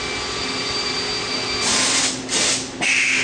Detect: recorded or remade recorded